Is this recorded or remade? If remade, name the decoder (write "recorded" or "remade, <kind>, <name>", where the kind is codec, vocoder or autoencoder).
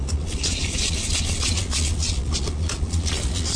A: remade, vocoder, Vocos